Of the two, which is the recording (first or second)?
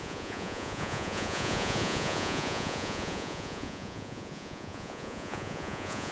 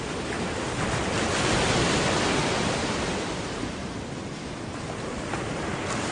second